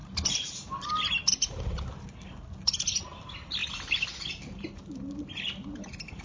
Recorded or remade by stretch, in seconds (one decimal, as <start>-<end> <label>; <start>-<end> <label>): 0.0-6.2 recorded